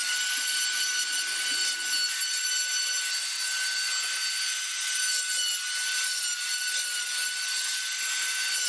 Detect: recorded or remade recorded